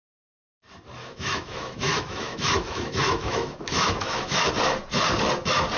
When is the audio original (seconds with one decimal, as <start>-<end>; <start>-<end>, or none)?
0.0-1.0; 4.5-5.8